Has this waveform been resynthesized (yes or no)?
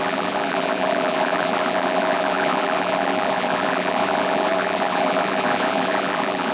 yes